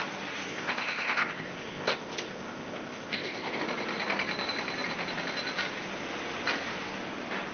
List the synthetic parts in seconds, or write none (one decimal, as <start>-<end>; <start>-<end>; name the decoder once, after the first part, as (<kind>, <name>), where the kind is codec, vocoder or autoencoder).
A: 0.5-3.6 (codec, ZipCodec)